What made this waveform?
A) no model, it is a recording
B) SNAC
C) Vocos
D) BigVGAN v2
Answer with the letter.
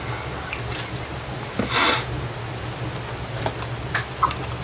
A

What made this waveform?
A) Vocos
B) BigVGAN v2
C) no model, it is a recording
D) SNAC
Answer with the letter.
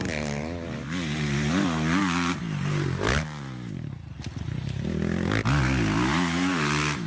C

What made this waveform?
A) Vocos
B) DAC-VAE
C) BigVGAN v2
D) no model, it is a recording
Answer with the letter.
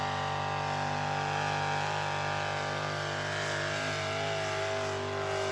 D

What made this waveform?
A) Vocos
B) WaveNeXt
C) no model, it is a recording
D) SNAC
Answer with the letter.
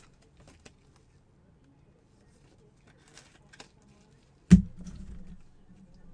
C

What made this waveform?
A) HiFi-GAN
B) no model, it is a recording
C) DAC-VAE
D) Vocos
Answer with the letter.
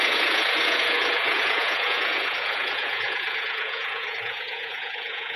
D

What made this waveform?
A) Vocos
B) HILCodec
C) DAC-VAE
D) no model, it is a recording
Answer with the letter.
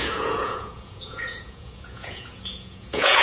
A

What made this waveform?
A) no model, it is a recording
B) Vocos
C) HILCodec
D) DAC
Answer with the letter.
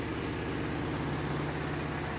A